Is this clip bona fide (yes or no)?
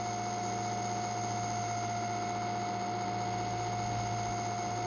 yes